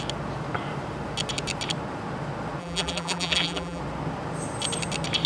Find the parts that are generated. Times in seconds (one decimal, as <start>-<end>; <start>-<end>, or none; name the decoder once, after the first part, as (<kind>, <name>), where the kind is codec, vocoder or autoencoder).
2.6-3.8 (vocoder, BigVGAN v2)